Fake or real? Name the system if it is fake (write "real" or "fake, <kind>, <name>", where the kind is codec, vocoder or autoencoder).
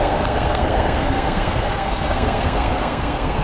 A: fake, codec, SNAC